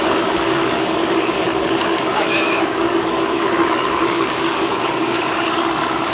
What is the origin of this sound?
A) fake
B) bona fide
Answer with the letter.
A